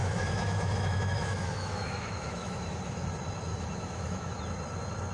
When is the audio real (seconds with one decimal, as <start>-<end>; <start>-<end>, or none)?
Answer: 3.1-3.5; 4.4-5.1